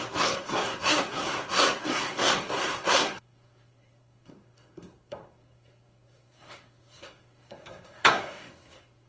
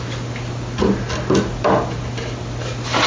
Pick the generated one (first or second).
first